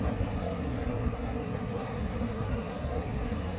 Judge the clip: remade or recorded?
remade